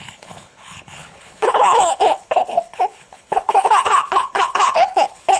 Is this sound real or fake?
fake